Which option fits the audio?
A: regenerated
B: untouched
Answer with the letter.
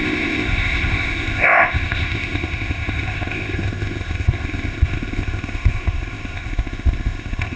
A